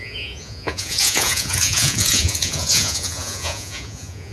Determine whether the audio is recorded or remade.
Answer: remade